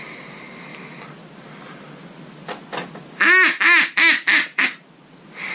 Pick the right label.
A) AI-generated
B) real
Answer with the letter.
B